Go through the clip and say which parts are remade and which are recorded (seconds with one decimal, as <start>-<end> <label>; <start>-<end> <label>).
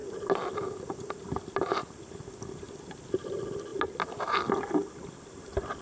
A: 0.0-5.8 recorded